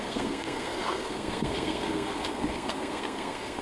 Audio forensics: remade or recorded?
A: remade